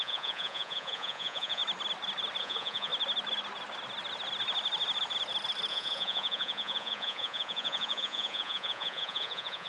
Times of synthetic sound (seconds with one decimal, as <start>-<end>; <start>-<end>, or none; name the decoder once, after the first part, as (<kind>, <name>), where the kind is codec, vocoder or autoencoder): 0.0-1.6 (vocoder, Vocos); 2.4-2.9; 5.7-9.7

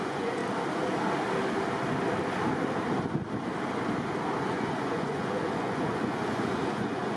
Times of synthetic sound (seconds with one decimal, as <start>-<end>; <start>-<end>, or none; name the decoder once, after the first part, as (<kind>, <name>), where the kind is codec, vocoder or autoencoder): 0.0-0.4 (vocoder, Vocos); 4.4-7.2

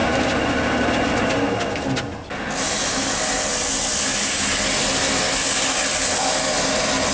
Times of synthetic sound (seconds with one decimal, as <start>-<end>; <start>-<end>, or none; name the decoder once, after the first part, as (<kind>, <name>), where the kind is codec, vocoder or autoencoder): none